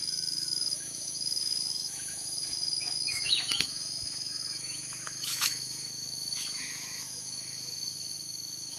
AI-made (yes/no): yes